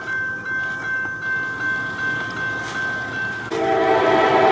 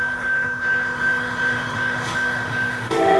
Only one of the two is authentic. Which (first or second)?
first